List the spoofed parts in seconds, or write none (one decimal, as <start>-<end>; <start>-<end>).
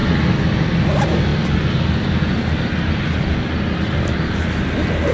none